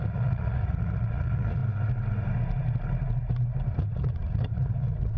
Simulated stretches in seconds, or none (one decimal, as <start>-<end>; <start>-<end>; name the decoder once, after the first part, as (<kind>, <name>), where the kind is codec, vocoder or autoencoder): 0.0-1.6 (vocoder, Vocos); 3.7-5.2